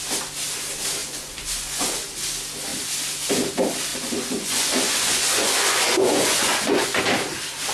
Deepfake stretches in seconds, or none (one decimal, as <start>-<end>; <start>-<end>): 1.0-2.1; 3.9-7.0